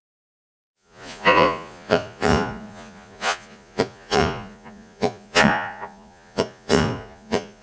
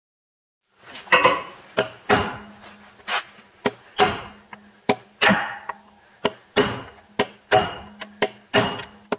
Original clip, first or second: second